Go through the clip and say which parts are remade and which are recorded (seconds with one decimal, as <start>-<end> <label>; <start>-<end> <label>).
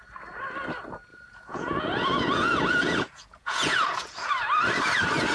0.0-1.1 recorded; 1.1-4.3 remade; 4.3-5.3 recorded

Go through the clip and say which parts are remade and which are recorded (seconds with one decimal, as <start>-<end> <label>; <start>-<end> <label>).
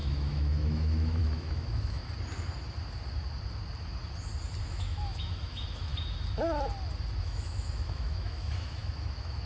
0.0-2.0 remade; 2.0-4.6 recorded; 4.6-5.9 remade; 5.9-7.2 recorded; 7.2-9.5 remade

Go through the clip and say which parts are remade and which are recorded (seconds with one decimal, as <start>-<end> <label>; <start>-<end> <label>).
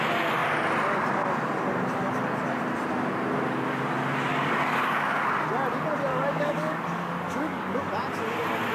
0.0-4.3 recorded; 4.3-5.3 remade; 5.3-6.1 recorded; 6.1-7.8 remade; 7.8-8.7 recorded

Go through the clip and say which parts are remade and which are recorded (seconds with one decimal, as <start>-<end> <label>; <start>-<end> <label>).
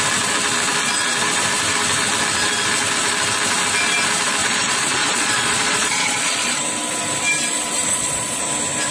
0.0-4.4 recorded; 4.4-6.5 remade; 6.5-7.9 recorded; 7.9-8.4 remade; 8.4-8.9 recorded